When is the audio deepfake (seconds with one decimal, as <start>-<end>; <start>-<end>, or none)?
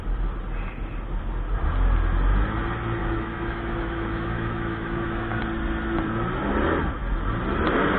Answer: 3.0-5.4